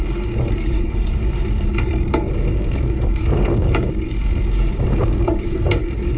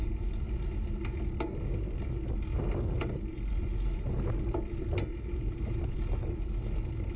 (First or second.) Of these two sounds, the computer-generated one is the first